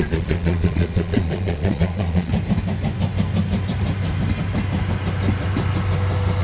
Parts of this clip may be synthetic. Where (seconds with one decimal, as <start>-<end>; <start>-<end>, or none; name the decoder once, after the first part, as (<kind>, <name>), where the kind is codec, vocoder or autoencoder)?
0.0-2.3 (vocoder, Vocos)